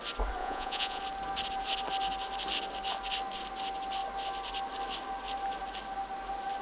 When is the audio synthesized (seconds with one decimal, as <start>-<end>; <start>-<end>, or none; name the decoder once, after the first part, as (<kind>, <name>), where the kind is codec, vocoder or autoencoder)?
0.4-1.0 (vocoder, Vocos)